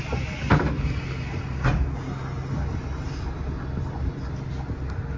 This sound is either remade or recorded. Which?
recorded